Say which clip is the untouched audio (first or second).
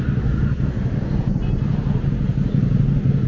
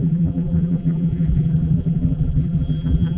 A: first